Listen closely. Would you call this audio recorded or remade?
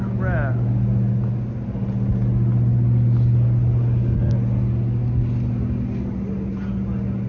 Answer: recorded